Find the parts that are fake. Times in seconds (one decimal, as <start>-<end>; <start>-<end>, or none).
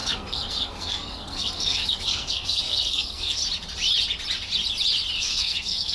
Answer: 0.0-3.4; 5.2-5.9